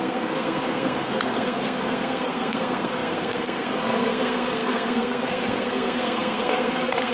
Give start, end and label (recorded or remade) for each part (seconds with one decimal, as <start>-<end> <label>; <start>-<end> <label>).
0.0-7.1 remade